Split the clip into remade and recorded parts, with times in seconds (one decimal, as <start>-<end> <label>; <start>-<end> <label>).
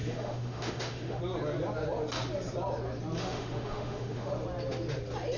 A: 0.0-1.2 remade; 1.2-3.2 recorded; 3.2-4.3 remade; 4.3-5.4 recorded